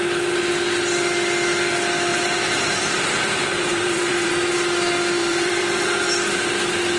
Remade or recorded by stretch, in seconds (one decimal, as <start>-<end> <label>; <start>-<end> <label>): 0.0-2.1 recorded; 2.1-4.3 remade; 4.3-5.2 recorded; 5.2-6.1 remade; 6.1-7.0 recorded